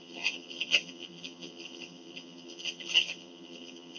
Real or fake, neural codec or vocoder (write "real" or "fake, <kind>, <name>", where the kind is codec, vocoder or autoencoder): fake, vocoder, HiFi-GAN